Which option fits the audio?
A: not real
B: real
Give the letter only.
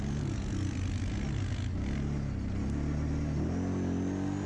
B